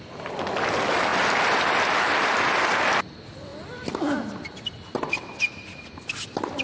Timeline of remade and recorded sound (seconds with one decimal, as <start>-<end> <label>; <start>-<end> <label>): 0.0-6.6 recorded